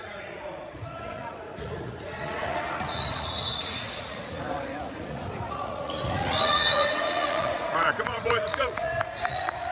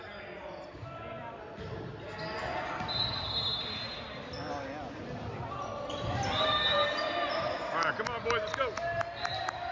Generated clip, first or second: first